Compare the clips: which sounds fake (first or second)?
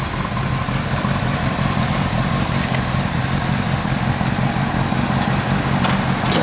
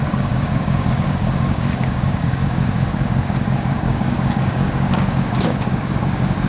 second